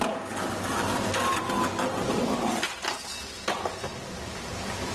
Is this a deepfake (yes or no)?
no